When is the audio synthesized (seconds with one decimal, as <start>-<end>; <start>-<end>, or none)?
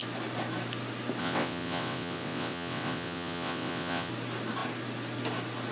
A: 1.2-4.1